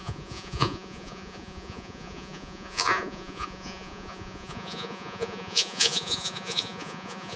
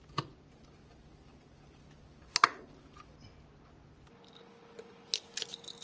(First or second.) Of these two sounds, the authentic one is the second